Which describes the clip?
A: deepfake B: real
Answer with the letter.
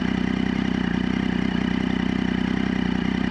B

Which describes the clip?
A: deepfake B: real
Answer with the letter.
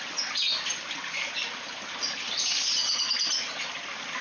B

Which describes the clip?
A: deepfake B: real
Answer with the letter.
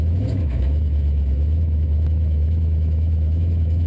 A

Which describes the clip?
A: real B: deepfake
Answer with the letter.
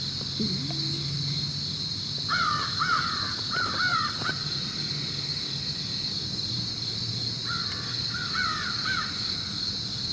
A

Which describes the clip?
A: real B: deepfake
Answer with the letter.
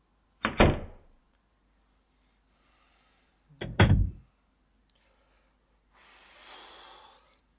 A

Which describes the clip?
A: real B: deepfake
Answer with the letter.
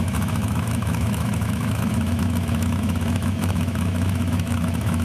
B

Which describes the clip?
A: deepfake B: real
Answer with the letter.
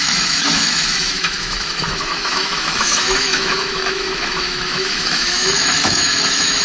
A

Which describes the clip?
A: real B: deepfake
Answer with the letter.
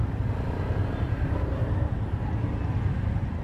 A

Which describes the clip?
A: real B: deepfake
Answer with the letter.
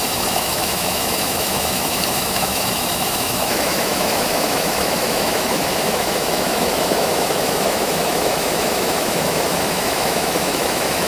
B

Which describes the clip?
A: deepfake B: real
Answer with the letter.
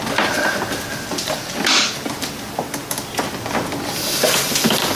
B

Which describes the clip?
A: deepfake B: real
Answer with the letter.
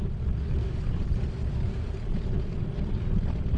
B